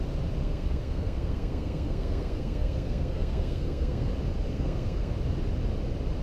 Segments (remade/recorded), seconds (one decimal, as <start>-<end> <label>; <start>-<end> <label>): 0.0-0.4 recorded; 0.4-4.1 remade; 4.1-4.5 recorded; 4.5-5.1 remade; 5.1-6.2 recorded